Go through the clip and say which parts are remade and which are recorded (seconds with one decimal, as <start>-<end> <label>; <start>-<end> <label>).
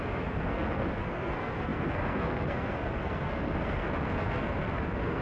0.0-5.2 remade